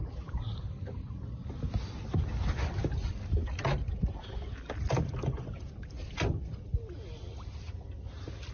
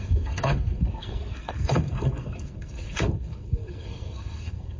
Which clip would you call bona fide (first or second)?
first